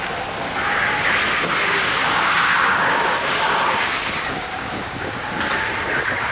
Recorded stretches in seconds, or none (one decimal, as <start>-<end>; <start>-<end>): 0.0-2.0; 5.3-6.3